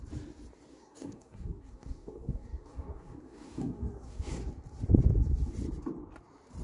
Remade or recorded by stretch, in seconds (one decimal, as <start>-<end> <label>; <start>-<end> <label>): 0.0-0.7 recorded; 0.7-4.5 remade; 4.5-6.6 recorded